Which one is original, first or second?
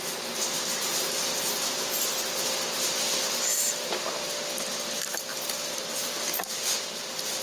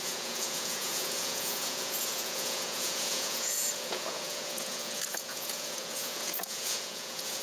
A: first